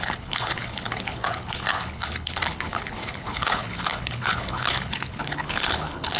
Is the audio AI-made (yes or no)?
yes